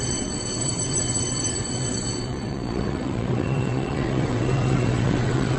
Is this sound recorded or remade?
remade